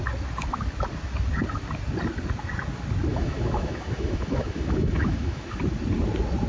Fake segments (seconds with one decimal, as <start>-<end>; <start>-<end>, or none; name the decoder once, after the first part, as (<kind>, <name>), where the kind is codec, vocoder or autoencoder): 3.1-5.6 (autoencoder, DAC-VAE)